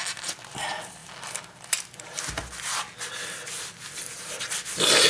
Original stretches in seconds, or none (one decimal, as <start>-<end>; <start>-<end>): 0.0-5.1

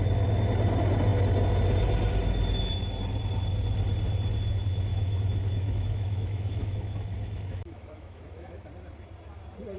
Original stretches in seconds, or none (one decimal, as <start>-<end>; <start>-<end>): 0.0-4.9; 8.7-9.8

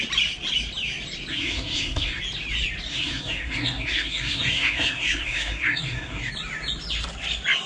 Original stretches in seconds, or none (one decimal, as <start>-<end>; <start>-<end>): 0.0-1.3; 2.2-2.9; 6.3-7.7

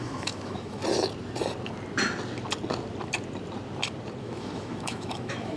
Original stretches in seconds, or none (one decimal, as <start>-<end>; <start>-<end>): 0.8-4.2

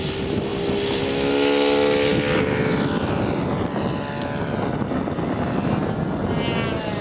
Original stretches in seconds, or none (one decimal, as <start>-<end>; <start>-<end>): 0.0-7.0

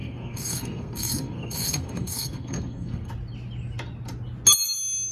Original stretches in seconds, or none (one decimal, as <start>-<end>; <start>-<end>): 3.1-5.1

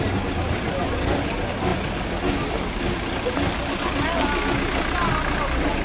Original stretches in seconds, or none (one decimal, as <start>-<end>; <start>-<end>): 0.0-5.8